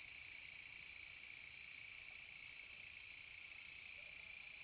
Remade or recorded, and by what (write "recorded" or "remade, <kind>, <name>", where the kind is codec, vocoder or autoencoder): recorded